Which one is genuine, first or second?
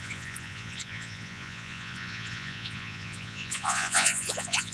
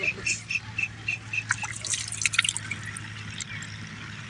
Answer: second